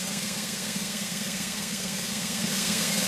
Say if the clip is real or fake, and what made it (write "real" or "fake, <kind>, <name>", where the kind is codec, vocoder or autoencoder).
fake, codec, SNAC